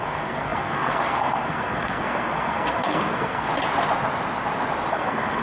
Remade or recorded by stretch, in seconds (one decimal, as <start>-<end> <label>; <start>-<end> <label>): 0.0-3.5 remade; 3.5-4.9 recorded; 4.9-5.4 remade